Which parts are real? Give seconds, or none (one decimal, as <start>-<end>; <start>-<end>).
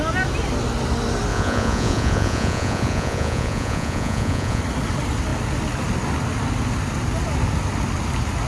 0.0-1.3; 4.6-8.5